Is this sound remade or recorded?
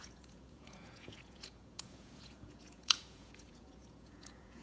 remade